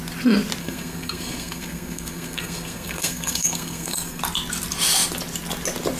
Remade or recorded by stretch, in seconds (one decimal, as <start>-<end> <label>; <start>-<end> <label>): 0.0-0.6 recorded; 0.6-4.2 remade; 4.2-6.0 recorded